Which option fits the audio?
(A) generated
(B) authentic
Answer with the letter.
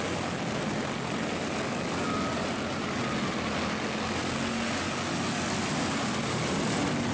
B